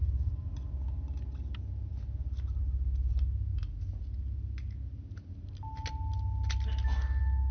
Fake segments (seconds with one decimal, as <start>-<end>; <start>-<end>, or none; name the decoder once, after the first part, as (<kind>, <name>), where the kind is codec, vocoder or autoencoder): none